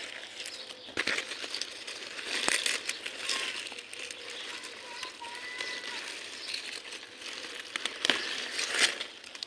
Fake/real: real